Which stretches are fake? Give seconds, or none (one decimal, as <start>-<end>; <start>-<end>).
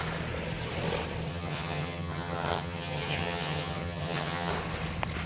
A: 1.3-4.5